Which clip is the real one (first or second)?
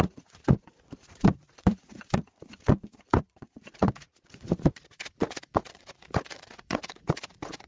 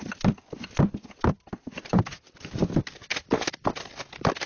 second